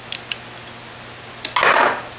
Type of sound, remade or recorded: recorded